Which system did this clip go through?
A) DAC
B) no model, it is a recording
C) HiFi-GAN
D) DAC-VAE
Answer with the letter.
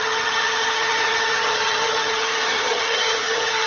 C